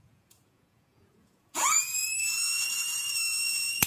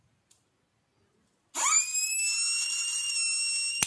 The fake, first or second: first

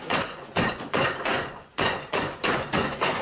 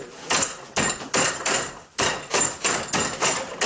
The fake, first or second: first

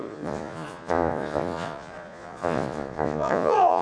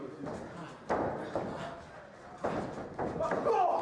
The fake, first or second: first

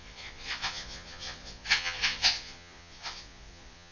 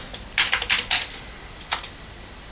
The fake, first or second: first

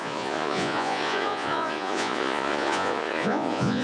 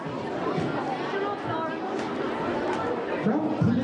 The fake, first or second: first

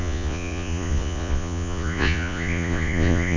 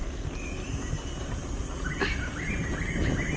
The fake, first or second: first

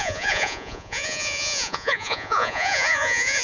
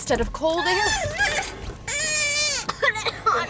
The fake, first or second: first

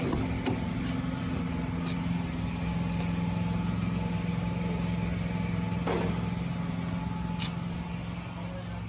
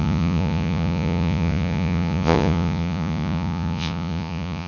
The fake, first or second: second